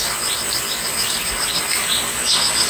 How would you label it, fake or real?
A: real